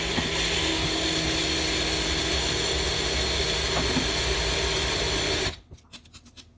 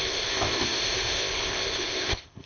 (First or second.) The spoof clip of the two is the second